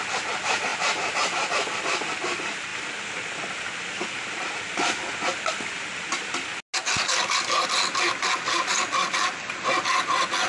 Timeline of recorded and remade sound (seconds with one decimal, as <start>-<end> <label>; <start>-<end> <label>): 0.0-10.5 recorded